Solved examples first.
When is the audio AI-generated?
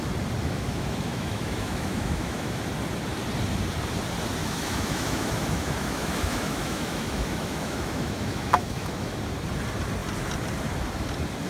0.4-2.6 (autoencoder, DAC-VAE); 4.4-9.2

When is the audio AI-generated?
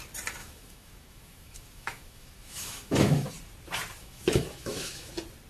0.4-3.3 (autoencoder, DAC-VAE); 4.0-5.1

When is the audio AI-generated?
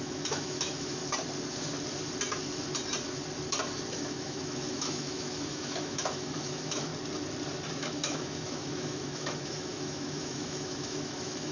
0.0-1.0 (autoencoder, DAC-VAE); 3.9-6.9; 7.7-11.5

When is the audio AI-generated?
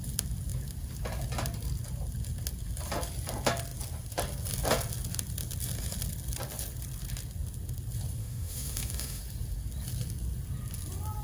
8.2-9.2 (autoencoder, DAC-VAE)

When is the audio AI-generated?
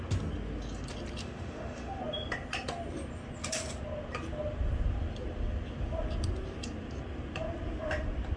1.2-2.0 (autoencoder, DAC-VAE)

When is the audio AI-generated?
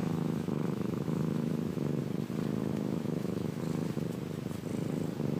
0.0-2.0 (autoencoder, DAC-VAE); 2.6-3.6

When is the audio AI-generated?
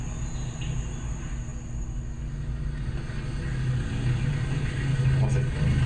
none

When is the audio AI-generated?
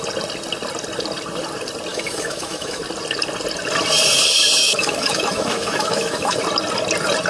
1.9-2.8 (autoencoder, DAC-VAE); 4.6-6.4